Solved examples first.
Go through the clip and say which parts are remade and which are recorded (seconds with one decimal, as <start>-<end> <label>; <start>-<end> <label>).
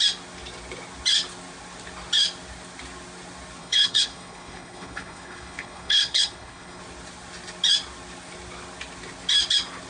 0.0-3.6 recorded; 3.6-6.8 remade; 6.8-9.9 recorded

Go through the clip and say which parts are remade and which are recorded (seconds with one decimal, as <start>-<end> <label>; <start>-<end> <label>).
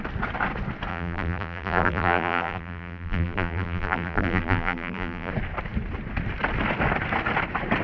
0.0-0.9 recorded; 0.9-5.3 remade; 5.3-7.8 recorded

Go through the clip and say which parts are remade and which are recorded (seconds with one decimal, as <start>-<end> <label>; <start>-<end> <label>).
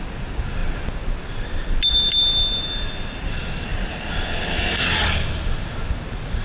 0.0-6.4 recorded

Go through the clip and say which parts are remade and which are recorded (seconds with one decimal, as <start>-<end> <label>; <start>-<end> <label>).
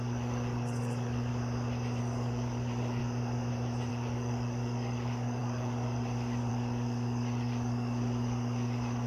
0.0-1.3 remade; 1.3-2.0 recorded; 2.0-3.0 remade; 3.0-3.9 recorded; 3.9-9.1 remade